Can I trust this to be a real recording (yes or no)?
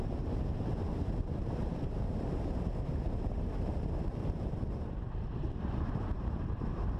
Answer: no